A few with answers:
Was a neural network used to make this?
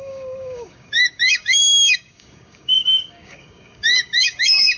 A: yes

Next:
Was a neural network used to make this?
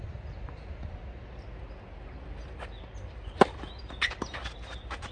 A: no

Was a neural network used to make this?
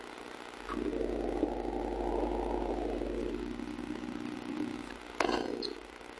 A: no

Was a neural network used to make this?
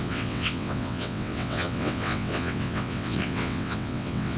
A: yes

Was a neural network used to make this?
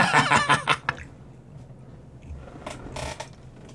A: no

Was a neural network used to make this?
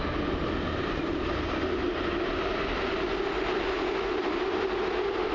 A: no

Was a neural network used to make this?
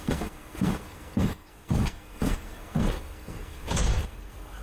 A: yes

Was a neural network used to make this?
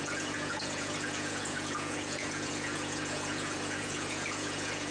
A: yes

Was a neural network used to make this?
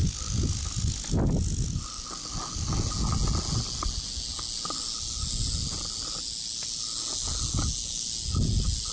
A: no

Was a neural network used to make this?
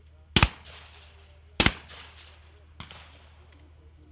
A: no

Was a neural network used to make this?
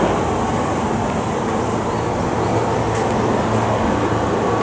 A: no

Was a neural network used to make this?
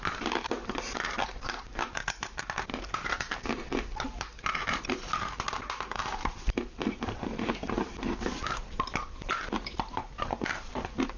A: yes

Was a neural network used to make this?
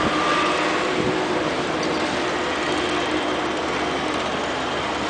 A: no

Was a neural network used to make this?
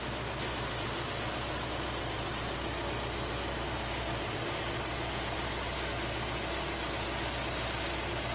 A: no